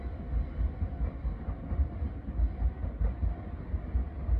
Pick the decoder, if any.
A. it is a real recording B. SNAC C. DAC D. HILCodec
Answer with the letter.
A